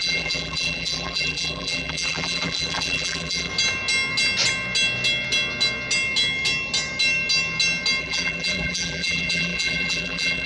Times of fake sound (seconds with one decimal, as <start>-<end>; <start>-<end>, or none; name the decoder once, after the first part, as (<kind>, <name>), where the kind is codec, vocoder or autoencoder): 0.0-3.5 (vocoder, BigVGAN v2); 8.0-10.5